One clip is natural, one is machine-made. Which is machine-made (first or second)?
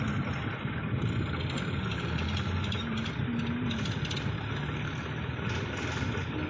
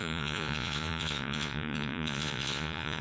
second